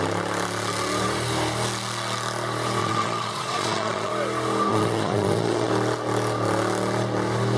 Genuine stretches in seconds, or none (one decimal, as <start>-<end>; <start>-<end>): 0.0-2.8; 4.1-4.7; 5.7-7.6